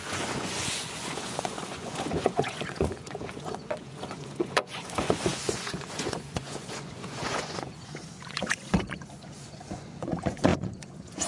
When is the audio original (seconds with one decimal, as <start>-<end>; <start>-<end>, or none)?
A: none